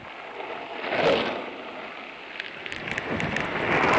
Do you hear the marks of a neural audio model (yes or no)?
no